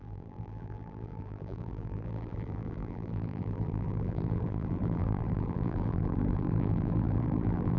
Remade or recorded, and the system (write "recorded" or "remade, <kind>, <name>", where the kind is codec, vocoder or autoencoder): remade, vocoder, BigVGAN v2